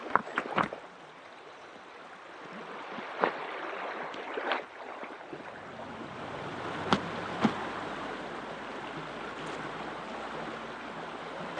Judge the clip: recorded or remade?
recorded